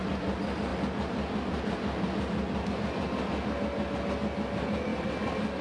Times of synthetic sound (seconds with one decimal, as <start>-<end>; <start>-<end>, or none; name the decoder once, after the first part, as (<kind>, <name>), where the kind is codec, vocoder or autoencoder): none

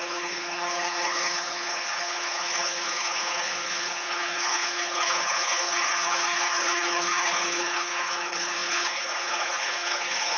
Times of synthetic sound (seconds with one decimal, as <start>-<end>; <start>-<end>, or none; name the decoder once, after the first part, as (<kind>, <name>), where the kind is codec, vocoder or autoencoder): 0.0-10.4 (codec, HILCodec)

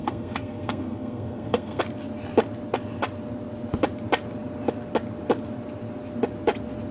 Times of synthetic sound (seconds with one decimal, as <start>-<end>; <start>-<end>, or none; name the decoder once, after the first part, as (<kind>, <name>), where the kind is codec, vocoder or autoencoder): 0.0-1.8 (codec, SNAC)

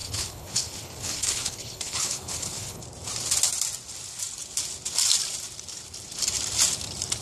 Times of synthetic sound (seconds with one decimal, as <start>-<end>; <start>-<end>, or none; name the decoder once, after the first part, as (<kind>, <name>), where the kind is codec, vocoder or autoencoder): 0.0-2.8 (codec, HILCodec)

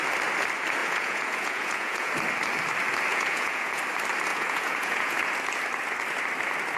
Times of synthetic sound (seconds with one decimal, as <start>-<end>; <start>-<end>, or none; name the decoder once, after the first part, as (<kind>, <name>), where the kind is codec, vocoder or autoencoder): 0.8-2.1 (vocoder, Vocos); 3.1-3.8; 4.3-5.2

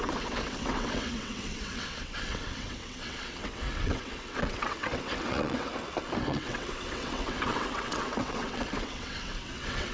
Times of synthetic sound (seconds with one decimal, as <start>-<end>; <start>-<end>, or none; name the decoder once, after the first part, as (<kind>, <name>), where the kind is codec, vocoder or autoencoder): 0.0-5.7 (vocoder, WaveNeXt); 6.2-9.9

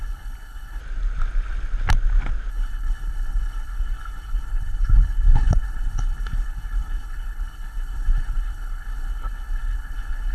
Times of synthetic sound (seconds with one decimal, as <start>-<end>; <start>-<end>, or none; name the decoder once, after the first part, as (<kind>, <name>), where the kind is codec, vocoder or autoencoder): 0.0-0.8 (codec, HILCodec); 2.5-10.3